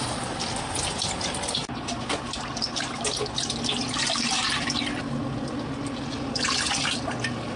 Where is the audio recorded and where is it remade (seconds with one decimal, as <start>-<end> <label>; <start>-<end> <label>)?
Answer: 0.0-7.6 recorded